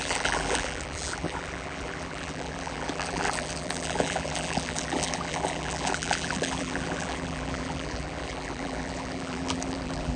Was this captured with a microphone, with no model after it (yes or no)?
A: no